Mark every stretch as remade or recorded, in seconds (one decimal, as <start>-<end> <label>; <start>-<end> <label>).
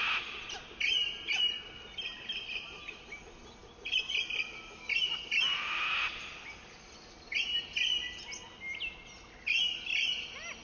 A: 0.0-10.6 recorded